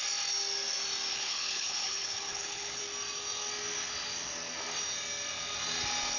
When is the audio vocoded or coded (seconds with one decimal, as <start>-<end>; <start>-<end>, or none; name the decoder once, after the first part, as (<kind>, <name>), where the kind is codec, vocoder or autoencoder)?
1.1-2.8 (codec, HILCodec)

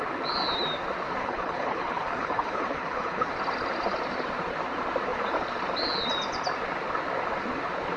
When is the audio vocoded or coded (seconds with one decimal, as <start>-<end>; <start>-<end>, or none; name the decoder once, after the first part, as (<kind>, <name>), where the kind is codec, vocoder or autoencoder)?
1.2-3.3 (codec, HILCodec)

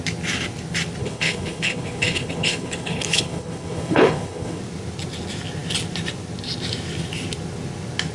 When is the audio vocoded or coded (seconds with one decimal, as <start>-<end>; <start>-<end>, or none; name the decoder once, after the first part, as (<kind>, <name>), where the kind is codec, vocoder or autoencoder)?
1.0-4.6 (codec, HILCodec)

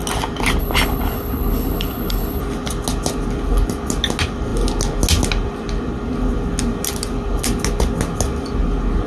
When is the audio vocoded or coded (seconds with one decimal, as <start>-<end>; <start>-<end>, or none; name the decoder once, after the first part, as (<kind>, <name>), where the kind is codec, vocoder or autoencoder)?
0.6-2.4 (codec, HILCodec)

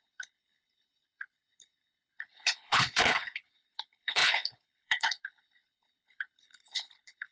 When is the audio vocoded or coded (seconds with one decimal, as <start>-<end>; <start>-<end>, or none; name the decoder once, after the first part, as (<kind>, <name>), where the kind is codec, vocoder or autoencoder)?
0.0-7.3 (codec, HILCodec)

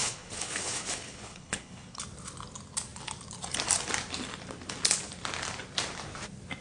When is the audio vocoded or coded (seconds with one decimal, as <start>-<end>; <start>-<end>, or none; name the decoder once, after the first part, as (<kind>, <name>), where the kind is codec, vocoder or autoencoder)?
0.0-2.0 (codec, HILCodec)

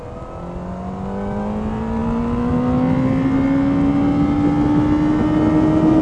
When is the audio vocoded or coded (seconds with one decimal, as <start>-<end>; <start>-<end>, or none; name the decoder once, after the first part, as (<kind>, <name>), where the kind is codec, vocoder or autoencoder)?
none

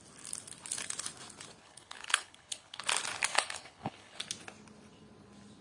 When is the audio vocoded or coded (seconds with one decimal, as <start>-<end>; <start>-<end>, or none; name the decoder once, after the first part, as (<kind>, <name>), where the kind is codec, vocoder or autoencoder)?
1.6-2.8 (codec, HILCodec); 3.3-4.2